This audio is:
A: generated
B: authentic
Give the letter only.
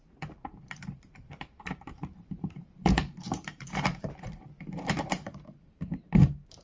A